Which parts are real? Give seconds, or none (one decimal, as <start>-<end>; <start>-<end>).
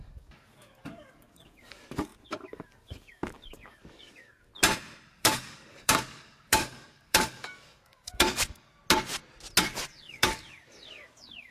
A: 4.5-5.1; 8.8-9.6